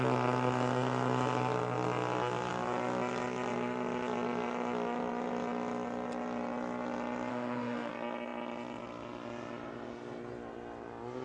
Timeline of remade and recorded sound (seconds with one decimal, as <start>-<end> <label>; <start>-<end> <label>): 0.0-7.3 recorded; 7.3-7.9 remade; 7.9-11.2 recorded